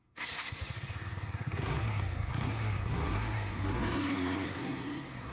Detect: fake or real fake